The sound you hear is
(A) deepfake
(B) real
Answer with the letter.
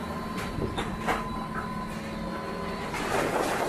B